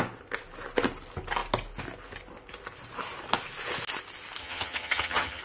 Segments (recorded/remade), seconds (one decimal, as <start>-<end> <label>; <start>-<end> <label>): 0.0-4.4 recorded; 4.4-5.4 remade